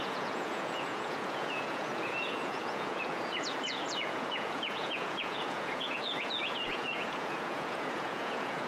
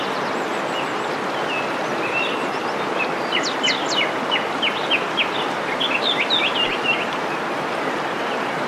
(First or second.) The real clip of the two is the second